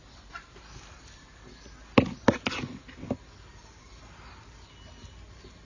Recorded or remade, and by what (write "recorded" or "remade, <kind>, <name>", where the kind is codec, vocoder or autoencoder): recorded